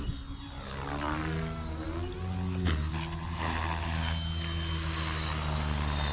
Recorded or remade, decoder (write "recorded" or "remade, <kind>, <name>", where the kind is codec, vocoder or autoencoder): recorded